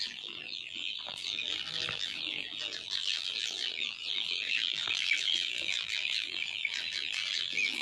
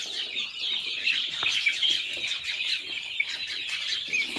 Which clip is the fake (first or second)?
first